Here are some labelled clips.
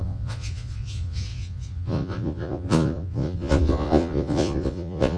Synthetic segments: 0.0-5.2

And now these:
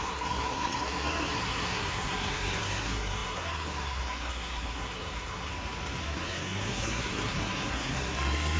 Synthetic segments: 0.0-5.5; 6.0-8.6

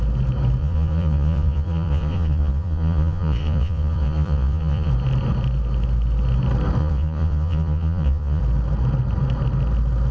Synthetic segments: 0.6-4.9; 6.8-8.4